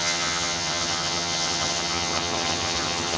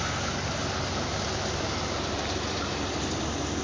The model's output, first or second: first